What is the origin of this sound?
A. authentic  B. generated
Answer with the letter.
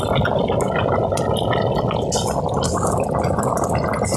A